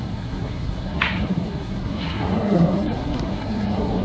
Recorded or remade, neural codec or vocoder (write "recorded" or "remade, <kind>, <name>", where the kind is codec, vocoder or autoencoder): remade, codec, SNAC